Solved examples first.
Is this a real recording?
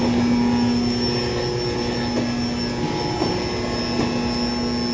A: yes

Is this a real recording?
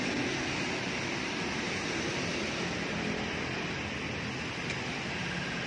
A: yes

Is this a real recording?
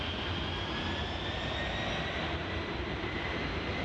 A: yes